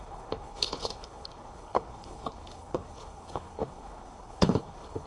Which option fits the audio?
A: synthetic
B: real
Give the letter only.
A